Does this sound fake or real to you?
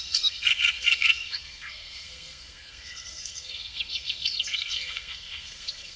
fake